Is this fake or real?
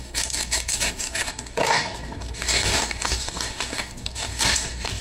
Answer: fake